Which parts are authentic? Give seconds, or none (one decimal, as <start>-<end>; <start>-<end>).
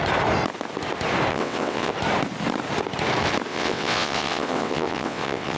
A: 0.0-1.3; 1.9-3.5